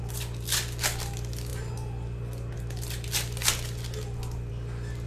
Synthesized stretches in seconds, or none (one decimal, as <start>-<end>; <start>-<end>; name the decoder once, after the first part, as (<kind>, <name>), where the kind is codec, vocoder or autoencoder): none